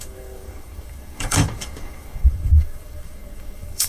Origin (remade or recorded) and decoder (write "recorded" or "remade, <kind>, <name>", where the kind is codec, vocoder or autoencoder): remade, codec, DAC